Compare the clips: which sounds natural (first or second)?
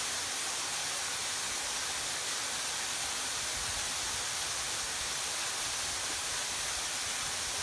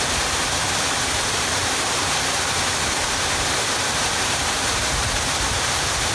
first